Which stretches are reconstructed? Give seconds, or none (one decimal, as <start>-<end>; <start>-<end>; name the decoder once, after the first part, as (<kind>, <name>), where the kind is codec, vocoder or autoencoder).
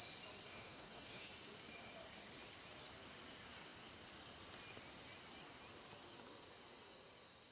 0.5-1.3 (autoencoder, DAC-VAE)